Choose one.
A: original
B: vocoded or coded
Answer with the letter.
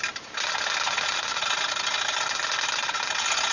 A